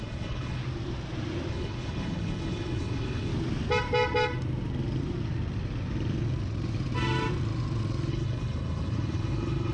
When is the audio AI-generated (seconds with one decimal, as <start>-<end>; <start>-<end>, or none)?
0.0-0.6; 1.5-3.3; 8.1-9.7